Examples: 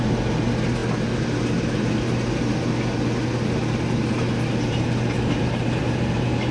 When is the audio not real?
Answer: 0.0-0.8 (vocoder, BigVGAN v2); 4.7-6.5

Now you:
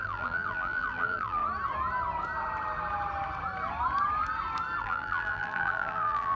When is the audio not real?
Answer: 0.0-1.4 (vocoder, BigVGAN v2); 4.8-6.3

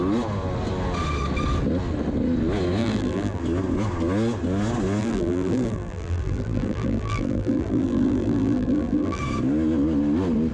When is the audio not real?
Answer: 2.8-3.4 (vocoder, BigVGAN v2); 5.0-9.2

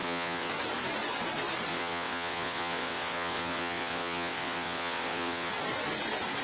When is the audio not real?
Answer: 0.0-0.5 (vocoder, WaveNeXt); 1.7-5.5

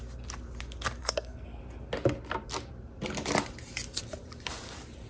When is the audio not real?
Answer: 1.0-1.6 (codec, SNAC)

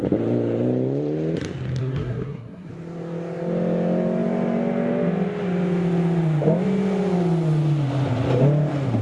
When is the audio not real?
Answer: 1.8-2.7 (codec, SNAC)

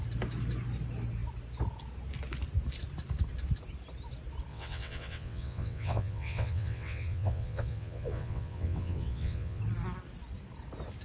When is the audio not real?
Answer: 4.5-9.6 (vocoder, WaveNeXt)

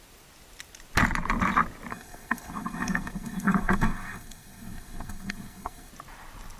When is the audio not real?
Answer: 1.9-5.9 (codec, SNAC)